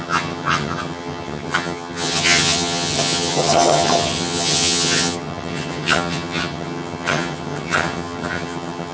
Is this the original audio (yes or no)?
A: no